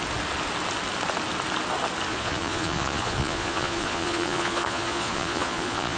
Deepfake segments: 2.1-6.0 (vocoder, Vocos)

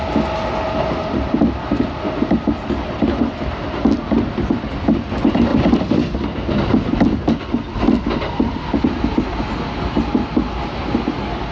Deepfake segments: none